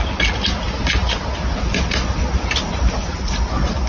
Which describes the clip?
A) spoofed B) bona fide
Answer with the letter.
B